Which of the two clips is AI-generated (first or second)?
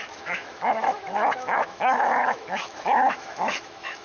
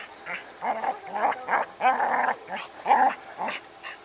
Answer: first